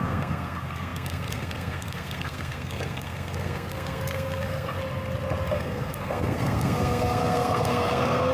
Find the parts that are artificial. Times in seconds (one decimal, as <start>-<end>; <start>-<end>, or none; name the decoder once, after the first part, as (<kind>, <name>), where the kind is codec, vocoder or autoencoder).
0.0-4.8 (codec, SNAC); 5.5-8.3